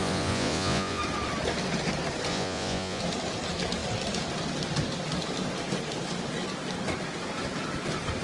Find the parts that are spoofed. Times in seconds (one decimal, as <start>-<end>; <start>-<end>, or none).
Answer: 0.0-1.0; 2.3-3.0